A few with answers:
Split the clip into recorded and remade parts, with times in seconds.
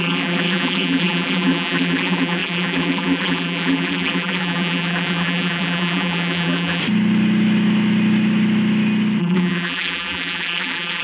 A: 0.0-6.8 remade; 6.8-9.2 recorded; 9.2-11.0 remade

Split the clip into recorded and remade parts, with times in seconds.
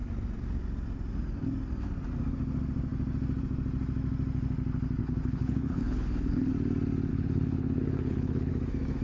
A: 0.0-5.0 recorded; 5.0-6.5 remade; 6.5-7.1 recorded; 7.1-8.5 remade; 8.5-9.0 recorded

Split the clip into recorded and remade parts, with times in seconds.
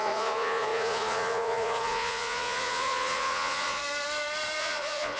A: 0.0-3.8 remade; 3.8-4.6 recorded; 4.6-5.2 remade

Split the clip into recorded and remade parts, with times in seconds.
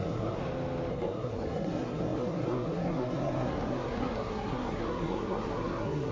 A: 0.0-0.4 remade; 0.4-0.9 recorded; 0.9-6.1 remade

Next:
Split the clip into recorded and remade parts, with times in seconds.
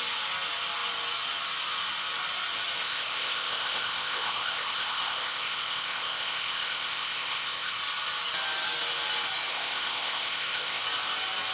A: 0.0-2.8 recorded; 2.8-7.8 remade; 7.8-9.5 recorded; 9.5-10.8 remade; 10.8-11.5 recorded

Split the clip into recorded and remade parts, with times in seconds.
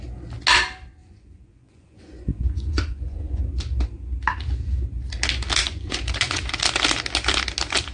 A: 0.0-1.0 recorded; 1.0-3.4 remade; 3.4-5.6 recorded; 5.6-6.5 remade; 6.5-7.9 recorded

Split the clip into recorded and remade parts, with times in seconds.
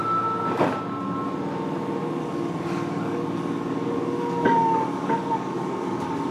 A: 0.0-2.2 recorded; 2.2-6.3 remade